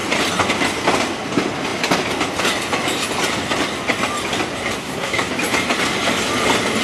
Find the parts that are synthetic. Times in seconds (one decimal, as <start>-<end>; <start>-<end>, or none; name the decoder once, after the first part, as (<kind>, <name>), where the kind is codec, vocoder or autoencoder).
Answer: 4.8-5.3 (codec, SNAC)